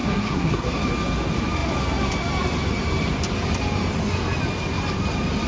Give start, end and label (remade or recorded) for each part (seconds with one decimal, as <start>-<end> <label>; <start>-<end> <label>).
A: 0.0-0.8 remade; 0.8-5.5 recorded